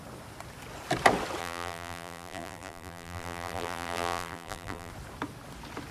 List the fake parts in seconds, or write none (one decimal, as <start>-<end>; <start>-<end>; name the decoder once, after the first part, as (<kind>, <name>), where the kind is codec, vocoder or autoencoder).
1.4-4.9 (vocoder, BigVGAN v2)